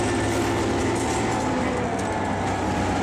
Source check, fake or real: real